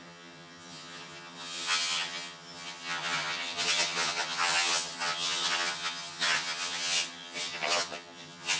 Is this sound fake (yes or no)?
yes